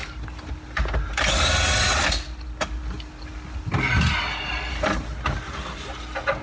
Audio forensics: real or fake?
real